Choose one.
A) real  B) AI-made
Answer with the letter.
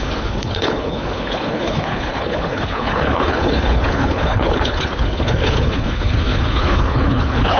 B